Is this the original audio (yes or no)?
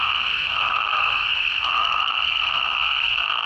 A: no